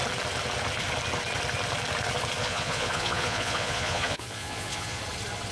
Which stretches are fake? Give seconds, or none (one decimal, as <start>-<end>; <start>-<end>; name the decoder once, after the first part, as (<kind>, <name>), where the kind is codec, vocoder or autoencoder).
2.4-5.0 (vocoder, Vocos)